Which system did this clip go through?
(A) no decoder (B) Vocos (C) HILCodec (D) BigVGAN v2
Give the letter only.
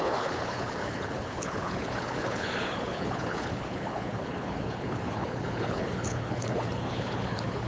C